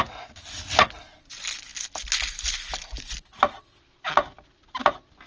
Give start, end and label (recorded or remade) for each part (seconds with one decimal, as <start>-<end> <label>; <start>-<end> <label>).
0.0-5.3 recorded